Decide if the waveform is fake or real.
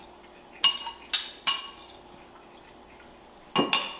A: real